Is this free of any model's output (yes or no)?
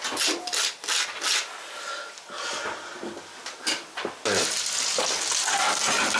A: yes